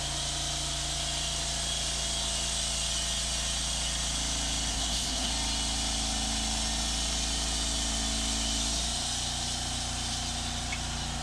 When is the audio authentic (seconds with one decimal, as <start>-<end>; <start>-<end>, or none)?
0.0-4.7; 5.3-11.2